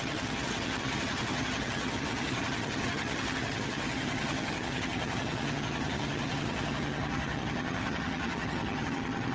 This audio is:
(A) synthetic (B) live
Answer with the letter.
A